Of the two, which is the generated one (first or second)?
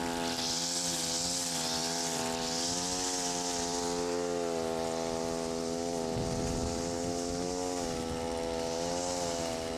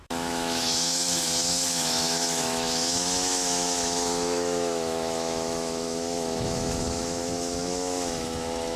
second